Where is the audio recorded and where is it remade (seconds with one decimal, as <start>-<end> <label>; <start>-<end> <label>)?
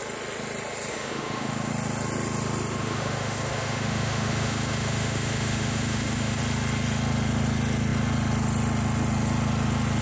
0.0-0.9 recorded; 0.9-1.7 remade; 1.7-2.8 recorded; 2.8-6.4 remade; 6.4-10.0 recorded